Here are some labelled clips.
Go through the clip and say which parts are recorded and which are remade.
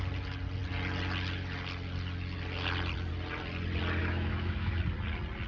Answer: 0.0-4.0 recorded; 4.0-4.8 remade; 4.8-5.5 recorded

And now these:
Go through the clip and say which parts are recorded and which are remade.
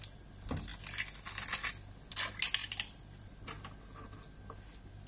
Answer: 0.0-2.6 recorded; 2.6-3.3 remade; 3.3-5.1 recorded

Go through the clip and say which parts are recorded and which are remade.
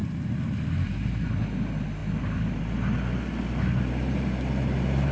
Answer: 0.0-5.1 recorded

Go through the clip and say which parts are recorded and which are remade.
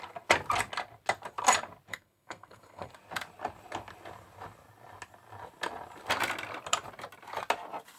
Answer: 0.0-1.9 recorded; 1.9-2.9 remade; 2.9-8.0 recorded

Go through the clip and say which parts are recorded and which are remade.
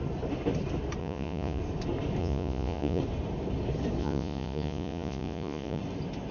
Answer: 0.0-1.0 recorded; 1.0-1.6 remade; 1.6-2.2 recorded; 2.2-3.0 remade; 3.0-4.0 recorded; 4.0-5.8 remade; 5.8-6.3 recorded